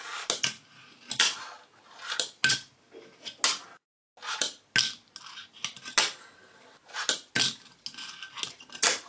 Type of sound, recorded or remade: recorded